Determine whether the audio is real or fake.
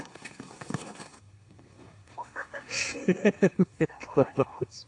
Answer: fake